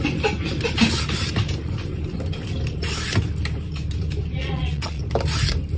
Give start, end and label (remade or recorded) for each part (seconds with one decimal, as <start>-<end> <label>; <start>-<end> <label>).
0.0-4.4 recorded; 4.4-5.0 remade; 5.0-5.8 recorded